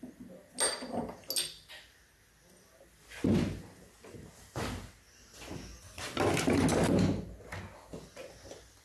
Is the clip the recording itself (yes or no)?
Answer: yes